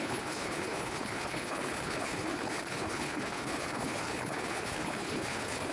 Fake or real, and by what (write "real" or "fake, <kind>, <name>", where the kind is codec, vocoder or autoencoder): fake, codec, HILCodec